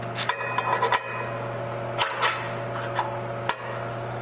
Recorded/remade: recorded